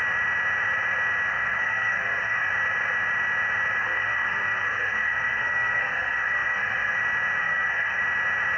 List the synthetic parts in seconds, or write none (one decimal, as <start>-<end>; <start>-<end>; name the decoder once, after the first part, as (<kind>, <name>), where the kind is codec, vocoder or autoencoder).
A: 1.3-2.5 (codec, SNAC); 3.8-7.0; 7.4-8.0